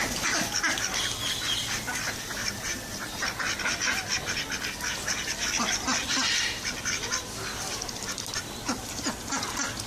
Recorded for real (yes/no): yes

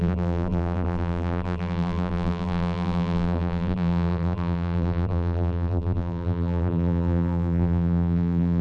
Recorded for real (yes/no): no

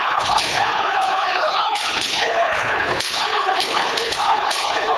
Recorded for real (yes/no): no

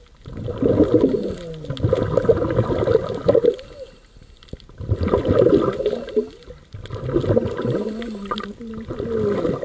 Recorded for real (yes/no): yes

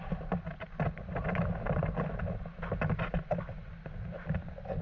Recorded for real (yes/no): yes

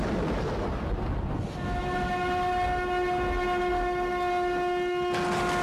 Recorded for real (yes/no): yes